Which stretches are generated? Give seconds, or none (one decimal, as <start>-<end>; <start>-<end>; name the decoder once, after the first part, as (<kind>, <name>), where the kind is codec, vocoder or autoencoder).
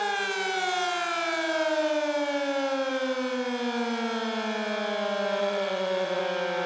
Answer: 5.4-6.2 (vocoder, Vocos)